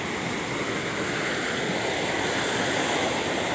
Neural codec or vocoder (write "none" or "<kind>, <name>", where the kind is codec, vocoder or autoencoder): none